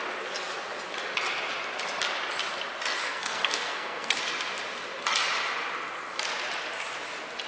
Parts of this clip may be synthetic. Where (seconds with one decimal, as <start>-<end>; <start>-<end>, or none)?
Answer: 3.0-4.2